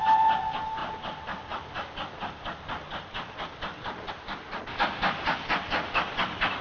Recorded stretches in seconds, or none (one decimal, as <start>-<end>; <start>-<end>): 0.0-6.6